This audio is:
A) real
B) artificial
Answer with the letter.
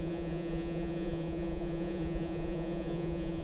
B